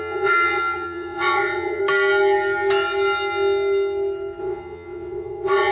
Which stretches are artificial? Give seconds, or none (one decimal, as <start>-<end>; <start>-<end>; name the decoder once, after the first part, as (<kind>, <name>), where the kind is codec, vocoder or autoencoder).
0.0-1.8 (vocoder, WaveNeXt); 4.4-5.7